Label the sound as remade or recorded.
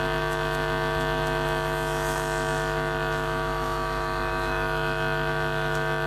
remade